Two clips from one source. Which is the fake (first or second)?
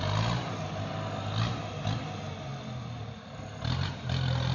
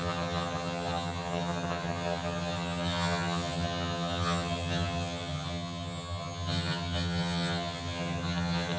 second